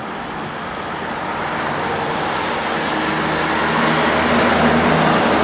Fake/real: real